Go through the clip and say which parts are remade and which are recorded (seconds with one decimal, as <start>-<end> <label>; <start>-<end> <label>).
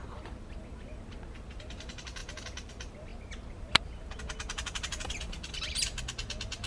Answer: 0.0-6.7 remade